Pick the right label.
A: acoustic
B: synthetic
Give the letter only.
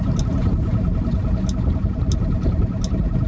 A